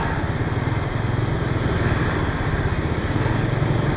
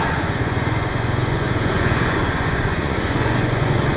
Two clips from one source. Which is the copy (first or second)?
second